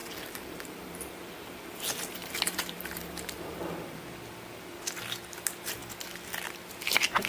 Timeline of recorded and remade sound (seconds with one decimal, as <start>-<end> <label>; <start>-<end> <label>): 0.0-1.8 remade; 1.8-2.2 recorded; 2.2-4.0 remade; 4.0-7.3 recorded